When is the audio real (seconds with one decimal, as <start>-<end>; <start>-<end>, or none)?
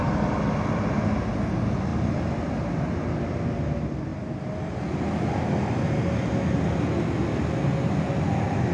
0.0-8.7